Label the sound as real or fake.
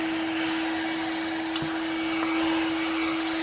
real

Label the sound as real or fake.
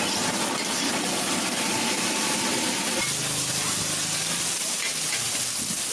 real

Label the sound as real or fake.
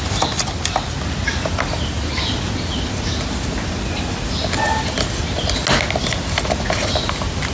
real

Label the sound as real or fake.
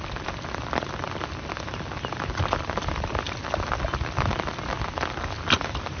real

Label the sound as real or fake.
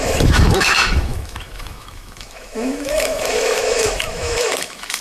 fake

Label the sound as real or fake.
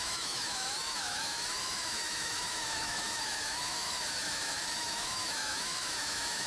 fake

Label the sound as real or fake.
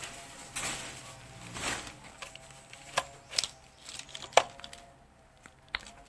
real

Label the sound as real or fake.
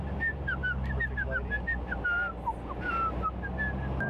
real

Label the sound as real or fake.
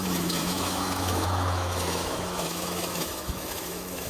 fake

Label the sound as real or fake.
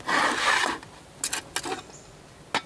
real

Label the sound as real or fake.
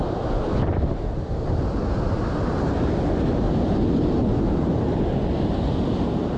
real